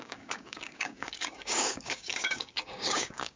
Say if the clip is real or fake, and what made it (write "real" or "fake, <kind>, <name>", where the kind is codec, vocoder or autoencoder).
fake, codec, DAC